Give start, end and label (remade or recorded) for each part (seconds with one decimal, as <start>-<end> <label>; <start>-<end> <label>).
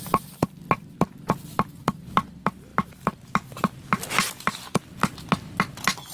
0.0-6.1 recorded